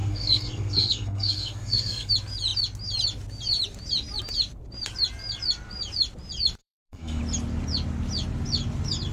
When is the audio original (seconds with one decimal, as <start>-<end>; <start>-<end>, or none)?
2.1-6.6; 7.2-9.1